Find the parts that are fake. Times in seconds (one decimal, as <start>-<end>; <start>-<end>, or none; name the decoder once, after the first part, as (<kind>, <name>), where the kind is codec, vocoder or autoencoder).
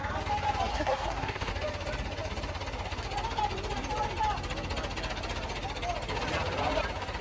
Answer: 0.7-1.5 (codec, SNAC)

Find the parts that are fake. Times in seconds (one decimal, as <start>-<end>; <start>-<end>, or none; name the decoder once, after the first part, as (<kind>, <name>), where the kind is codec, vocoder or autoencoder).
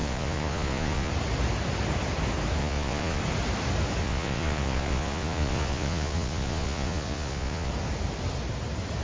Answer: 0.0-1.1 (vocoder, Vocos); 2.6-3.2; 4.0-7.7